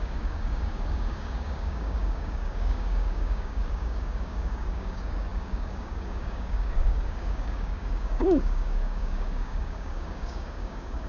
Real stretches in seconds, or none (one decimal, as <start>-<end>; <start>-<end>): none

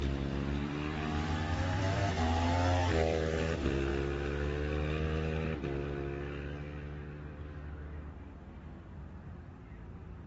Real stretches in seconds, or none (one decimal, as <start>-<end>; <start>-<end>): 2.0-2.9; 3.9-8.6

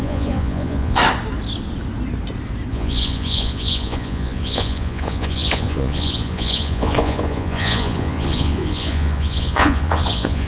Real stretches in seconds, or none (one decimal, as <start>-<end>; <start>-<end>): 1.0-2.7

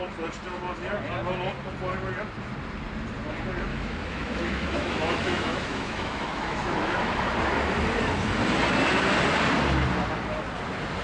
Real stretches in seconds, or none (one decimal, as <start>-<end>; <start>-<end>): 0.0-3.7; 7.3-11.0